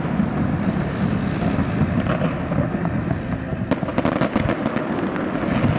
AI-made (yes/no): no